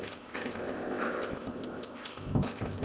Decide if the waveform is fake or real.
fake